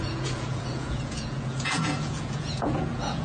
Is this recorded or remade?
remade